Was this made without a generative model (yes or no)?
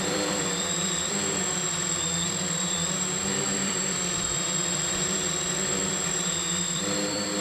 no